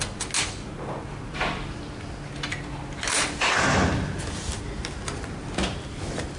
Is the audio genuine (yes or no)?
yes